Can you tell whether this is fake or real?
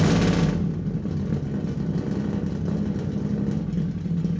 real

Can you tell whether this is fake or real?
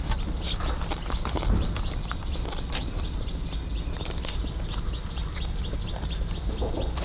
real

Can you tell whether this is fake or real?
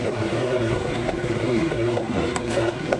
fake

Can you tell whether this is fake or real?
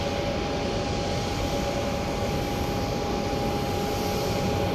real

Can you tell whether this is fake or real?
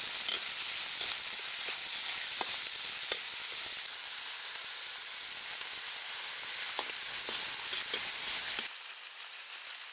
real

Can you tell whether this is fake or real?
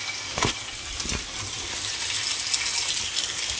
real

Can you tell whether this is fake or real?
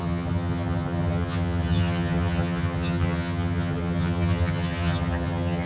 fake